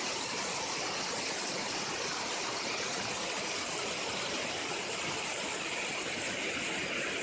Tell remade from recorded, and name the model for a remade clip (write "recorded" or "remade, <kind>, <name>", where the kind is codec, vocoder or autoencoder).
recorded